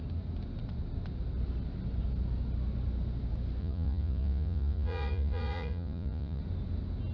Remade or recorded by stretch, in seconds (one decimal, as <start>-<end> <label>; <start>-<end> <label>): 0.0-3.6 recorded; 3.6-6.4 remade; 6.4-7.1 recorded